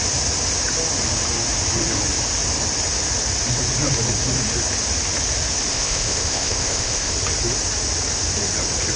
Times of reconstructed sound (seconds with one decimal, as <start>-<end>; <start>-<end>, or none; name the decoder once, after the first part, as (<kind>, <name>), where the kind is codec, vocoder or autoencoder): 5.7-7.1 (codec, ZipCodec)